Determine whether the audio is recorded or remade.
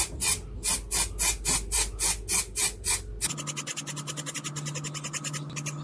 recorded